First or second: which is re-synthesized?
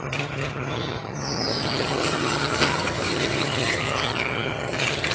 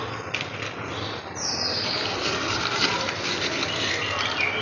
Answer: first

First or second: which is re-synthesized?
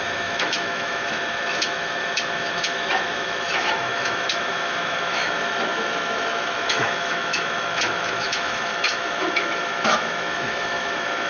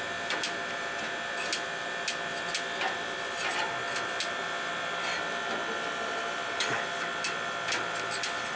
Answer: first